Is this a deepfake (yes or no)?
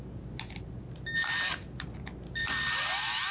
no